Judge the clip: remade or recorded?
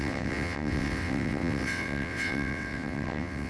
remade